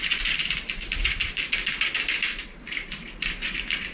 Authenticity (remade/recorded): recorded